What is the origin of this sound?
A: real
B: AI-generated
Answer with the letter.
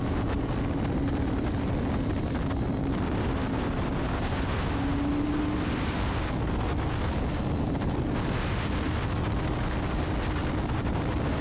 A